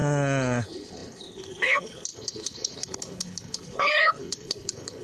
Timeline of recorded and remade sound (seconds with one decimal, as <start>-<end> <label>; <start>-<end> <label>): 0.0-0.6 recorded; 0.6-5.0 remade